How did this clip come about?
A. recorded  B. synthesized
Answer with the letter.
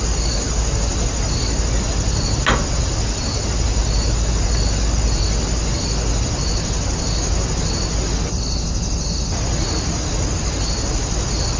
A